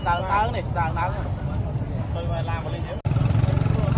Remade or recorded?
recorded